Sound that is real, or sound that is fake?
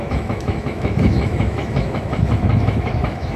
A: fake